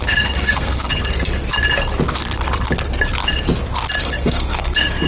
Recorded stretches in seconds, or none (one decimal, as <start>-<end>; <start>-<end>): 0.9-4.0